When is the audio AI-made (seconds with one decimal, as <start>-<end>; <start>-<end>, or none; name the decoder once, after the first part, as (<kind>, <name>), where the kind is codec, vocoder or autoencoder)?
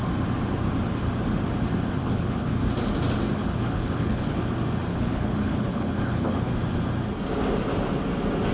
2.0-2.6 (codec, HILCodec); 3.3-4.4; 4.9-6.5